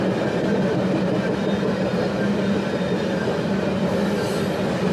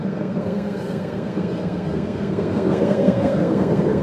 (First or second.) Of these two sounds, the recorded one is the first